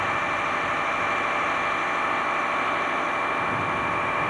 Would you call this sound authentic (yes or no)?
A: yes